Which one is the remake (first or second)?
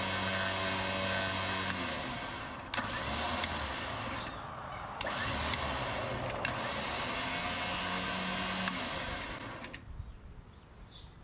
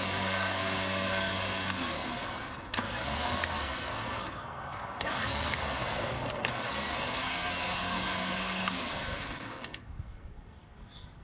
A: second